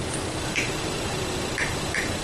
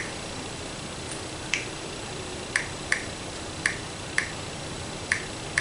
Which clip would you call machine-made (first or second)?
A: second